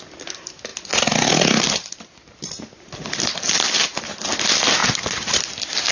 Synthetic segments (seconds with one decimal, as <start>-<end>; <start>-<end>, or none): none